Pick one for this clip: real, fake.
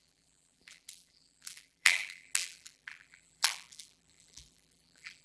fake